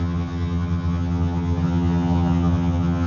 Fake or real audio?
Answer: fake